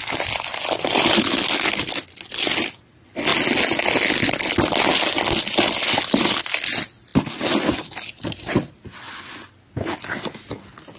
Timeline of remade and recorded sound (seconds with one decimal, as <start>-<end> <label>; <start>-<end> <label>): 0.0-11.0 recorded